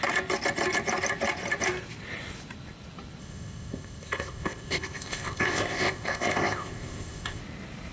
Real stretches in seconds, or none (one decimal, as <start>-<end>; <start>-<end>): 0.0-3.2; 7.4-7.9